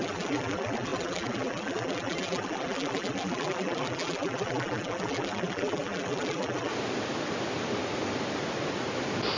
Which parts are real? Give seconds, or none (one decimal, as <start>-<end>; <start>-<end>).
6.7-9.4